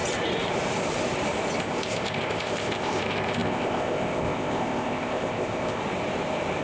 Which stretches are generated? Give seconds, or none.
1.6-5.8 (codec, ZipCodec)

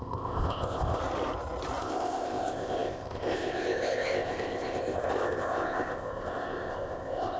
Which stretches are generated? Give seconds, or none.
0.0-1.0 (codec, ZipCodec); 1.8-7.4

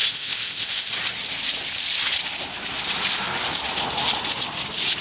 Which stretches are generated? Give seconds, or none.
0.0-0.9 (codec, ZipCodec)

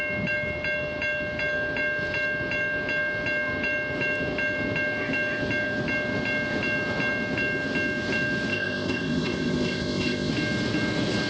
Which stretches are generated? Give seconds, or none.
8.5-10.3 (codec, ZipCodec)

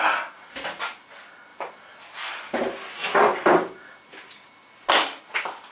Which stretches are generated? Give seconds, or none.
none

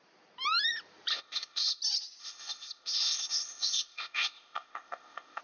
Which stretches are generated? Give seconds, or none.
1.1-1.8 (codec, ZipCodec); 2.2-5.4

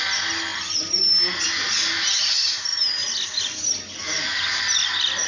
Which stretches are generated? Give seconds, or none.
none